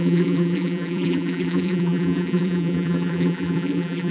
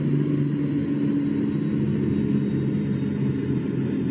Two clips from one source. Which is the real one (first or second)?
second